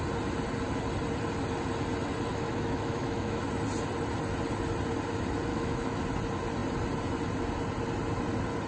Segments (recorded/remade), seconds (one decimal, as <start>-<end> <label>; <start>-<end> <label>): 0.0-2.3 recorded; 2.3-3.4 remade; 3.4-5.5 recorded; 5.5-6.0 remade; 6.0-8.7 recorded